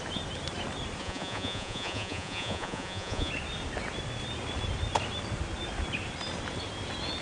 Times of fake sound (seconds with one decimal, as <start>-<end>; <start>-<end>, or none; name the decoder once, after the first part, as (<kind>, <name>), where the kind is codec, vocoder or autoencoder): 1.0-3.3 (vocoder, Vocos)